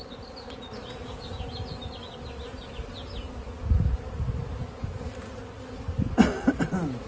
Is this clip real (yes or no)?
yes